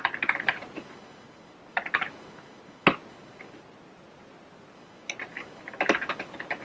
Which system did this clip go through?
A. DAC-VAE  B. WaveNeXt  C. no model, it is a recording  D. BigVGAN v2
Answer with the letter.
C